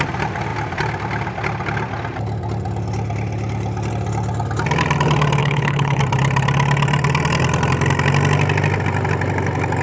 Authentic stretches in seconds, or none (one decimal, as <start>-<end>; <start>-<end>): 0.0-5.4; 6.0-9.8